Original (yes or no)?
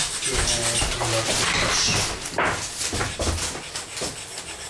yes